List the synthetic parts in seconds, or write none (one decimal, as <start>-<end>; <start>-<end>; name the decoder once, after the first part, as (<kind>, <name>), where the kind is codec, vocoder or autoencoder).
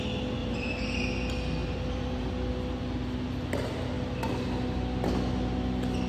0.4-1.1 (vocoder, BigVGAN v2); 1.6-2.2